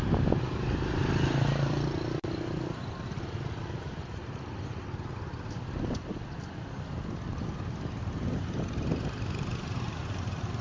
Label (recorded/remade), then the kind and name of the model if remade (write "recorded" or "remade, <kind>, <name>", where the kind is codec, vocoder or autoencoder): recorded